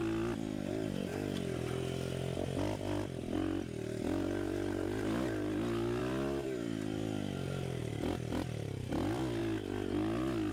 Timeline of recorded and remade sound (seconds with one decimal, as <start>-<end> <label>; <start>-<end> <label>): 0.0-0.7 recorded; 0.7-1.1 remade; 1.1-6.0 recorded; 6.0-9.4 remade; 9.4-10.5 recorded